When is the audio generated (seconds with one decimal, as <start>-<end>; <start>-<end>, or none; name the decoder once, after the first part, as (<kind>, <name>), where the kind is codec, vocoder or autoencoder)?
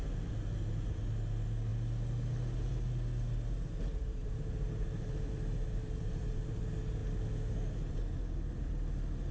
4.2-6.6 (vocoder, BigVGAN v2)